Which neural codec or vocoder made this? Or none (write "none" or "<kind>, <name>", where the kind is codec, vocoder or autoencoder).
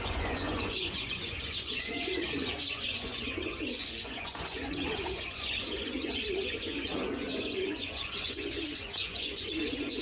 vocoder, Vocos